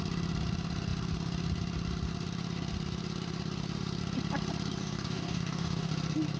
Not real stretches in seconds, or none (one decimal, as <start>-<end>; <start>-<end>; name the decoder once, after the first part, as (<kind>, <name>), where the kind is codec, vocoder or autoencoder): 4.8-5.9 (codec, DAC)